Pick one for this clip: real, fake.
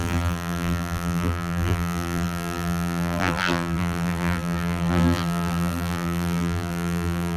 fake